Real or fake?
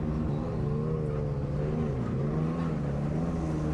real